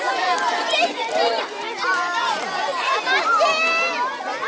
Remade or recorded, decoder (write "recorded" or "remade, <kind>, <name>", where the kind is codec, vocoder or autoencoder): recorded